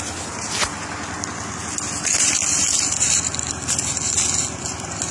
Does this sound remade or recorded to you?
recorded